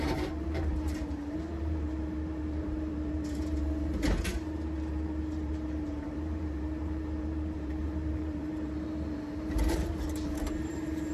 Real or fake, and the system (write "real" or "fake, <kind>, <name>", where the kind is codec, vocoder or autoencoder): fake, vocoder, BigVGAN v2